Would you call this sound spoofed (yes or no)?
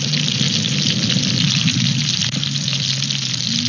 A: no